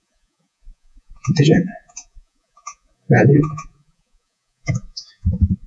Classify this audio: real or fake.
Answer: fake